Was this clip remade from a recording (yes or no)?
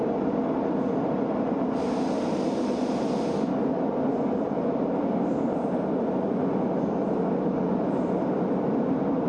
no